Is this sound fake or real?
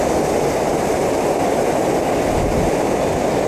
real